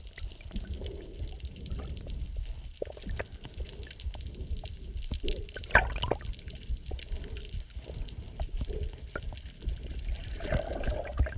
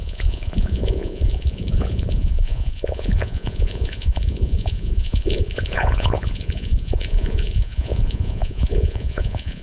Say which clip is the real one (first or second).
first